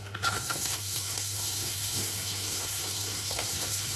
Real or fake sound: fake